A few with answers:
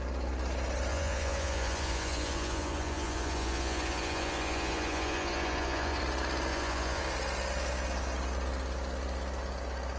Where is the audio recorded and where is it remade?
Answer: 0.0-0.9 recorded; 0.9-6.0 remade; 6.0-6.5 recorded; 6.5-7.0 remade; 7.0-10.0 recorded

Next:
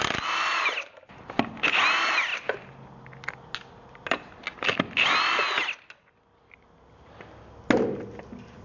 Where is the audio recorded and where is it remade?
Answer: 0.0-8.6 recorded

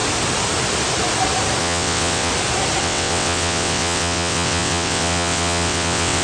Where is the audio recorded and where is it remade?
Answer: 0.0-1.6 recorded; 1.6-2.3 remade; 2.3-2.8 recorded; 2.8-6.2 remade

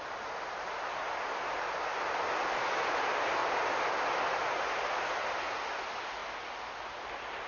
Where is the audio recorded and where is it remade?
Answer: 0.0-7.5 recorded

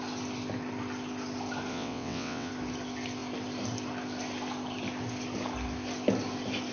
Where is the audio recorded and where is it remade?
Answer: 0.0-1.7 recorded; 1.7-2.5 remade; 2.5-6.7 recorded

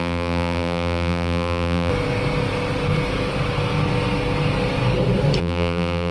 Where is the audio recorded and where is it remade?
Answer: 0.0-1.9 remade; 1.9-5.4 recorded; 5.4-6.1 remade